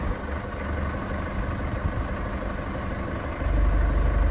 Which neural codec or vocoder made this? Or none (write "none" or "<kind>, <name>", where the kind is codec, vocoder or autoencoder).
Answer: none